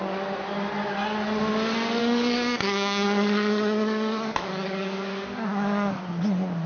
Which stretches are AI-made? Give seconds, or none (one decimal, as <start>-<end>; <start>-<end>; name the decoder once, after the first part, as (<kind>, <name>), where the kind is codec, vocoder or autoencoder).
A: 2.0-6.0 (codec, DAC)